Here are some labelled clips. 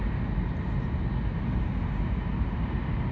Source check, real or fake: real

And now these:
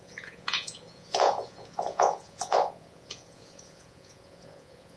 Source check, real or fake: fake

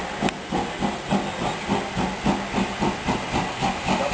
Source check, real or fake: real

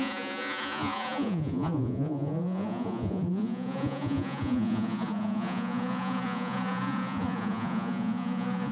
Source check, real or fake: fake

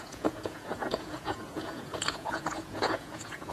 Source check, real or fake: fake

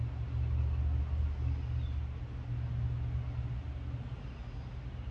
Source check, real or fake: real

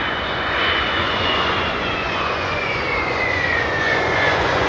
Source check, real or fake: fake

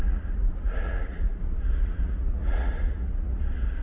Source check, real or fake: fake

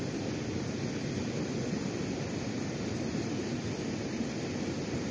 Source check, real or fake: real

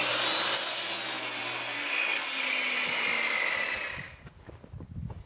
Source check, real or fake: real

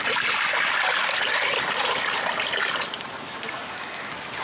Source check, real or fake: real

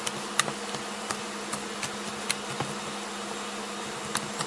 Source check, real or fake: real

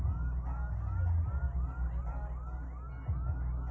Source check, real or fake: real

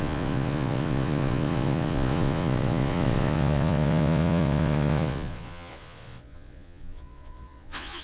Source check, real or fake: fake